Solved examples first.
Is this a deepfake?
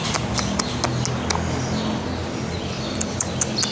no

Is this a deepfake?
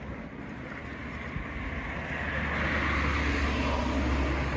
no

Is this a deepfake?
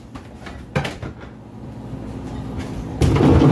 no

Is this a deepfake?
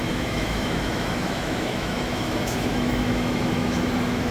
yes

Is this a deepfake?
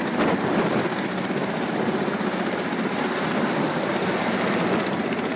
no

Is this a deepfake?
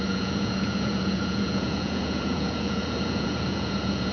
yes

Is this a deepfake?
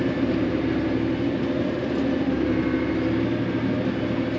no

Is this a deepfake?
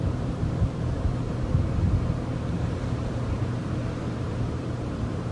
yes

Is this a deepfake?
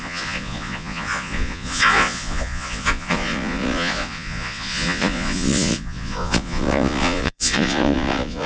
yes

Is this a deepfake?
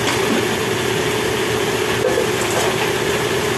no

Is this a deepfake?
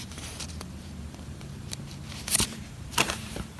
yes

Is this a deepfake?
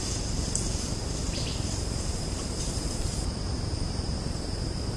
yes